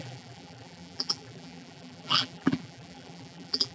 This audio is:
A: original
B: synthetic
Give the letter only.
B